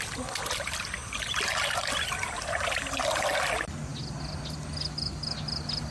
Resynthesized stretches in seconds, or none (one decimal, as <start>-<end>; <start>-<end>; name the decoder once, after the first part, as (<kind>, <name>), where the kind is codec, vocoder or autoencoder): none